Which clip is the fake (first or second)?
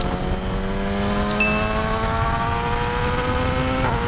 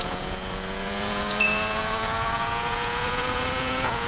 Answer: second